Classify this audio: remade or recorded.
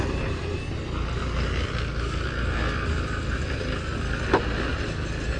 recorded